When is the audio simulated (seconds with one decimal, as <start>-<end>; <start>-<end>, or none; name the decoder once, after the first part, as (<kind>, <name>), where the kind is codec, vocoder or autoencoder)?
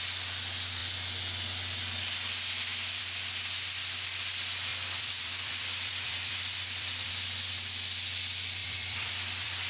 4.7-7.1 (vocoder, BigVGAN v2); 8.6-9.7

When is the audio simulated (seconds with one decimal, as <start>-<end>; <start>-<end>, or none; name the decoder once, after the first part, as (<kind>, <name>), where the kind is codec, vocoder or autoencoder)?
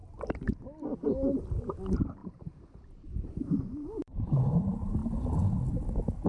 2.2-4.6 (vocoder, BigVGAN v2)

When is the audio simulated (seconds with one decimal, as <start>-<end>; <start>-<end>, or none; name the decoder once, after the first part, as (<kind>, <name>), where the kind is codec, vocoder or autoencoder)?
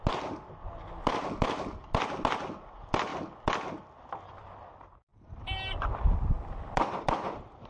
5.1-5.7 (vocoder, BigVGAN v2)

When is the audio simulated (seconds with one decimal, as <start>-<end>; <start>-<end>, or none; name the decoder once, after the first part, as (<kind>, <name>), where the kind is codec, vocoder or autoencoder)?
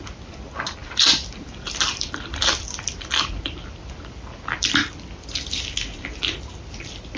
0.8-5.1 (vocoder, BigVGAN v2)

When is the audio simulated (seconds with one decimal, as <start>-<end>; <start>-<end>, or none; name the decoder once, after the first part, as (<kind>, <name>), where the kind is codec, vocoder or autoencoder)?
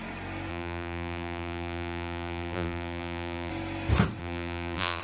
0.5-3.5 (vocoder, BigVGAN v2); 4.2-5.0